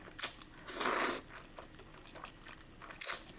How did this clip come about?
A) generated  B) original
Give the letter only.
B